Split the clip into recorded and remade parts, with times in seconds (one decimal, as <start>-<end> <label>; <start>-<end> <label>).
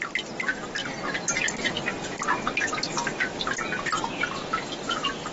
0.0-5.3 recorded